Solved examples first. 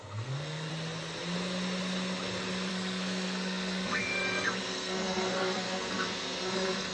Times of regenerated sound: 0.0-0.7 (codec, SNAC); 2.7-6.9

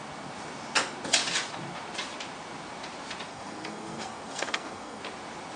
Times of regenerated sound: 3.3-5.0 (codec, SNAC)

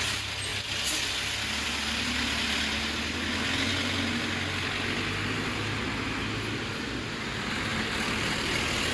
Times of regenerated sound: none

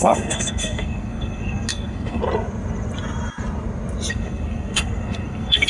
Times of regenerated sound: 0.0-2.2 (codec, SNAC); 4.1-5.7

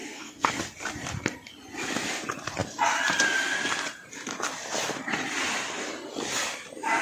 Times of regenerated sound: 0.0-0.6 (codec, SNAC)

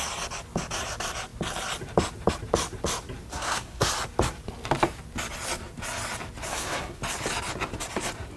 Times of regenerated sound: 3.3-3.9 (codec, SNAC); 6.5-7.0